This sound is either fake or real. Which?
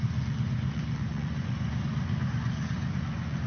fake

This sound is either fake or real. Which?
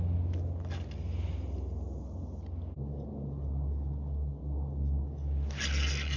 real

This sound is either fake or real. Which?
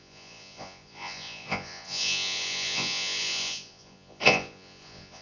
fake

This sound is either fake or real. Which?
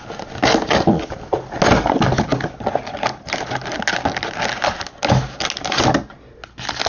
real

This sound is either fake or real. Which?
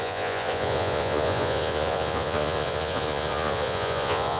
fake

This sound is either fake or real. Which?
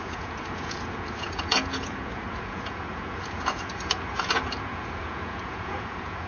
fake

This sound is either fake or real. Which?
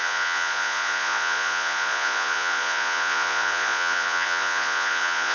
fake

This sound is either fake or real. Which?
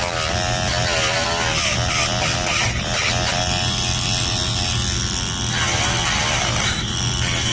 real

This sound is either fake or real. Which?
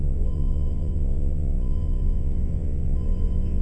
fake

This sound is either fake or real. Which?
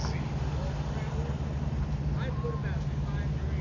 real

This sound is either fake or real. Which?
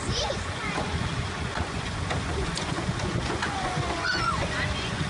fake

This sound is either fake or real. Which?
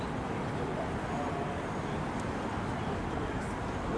real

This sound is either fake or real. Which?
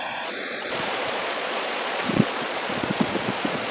fake